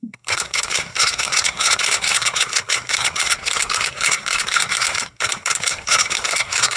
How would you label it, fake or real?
fake